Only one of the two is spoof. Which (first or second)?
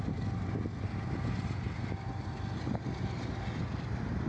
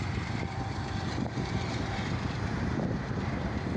second